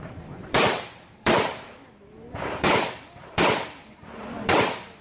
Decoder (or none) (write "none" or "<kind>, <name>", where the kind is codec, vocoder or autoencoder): vocoder, BigVGAN v2